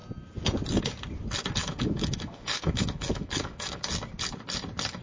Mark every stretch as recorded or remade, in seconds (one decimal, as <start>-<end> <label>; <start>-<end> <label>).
0.0-1.6 recorded; 1.6-3.8 remade; 3.8-5.0 recorded